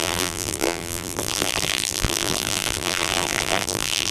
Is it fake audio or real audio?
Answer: fake